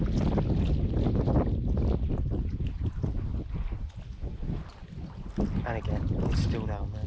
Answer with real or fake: real